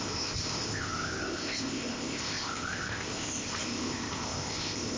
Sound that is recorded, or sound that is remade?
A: remade